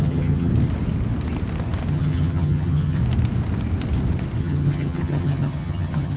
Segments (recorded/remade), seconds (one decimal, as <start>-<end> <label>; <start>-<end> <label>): 0.0-0.5 remade; 0.5-1.9 recorded; 1.9-3.0 remade; 3.0-4.4 recorded; 4.4-6.2 remade